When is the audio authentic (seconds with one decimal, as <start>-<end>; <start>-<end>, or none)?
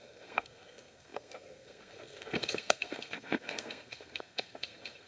none